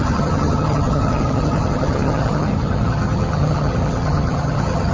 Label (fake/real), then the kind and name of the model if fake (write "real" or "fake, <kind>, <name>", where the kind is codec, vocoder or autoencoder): fake, vocoder, HiFi-GAN